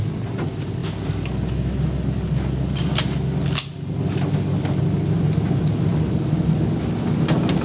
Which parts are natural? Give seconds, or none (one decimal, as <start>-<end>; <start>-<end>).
0.0-7.6